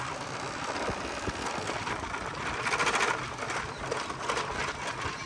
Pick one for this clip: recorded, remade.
recorded